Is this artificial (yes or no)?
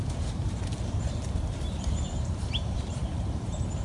yes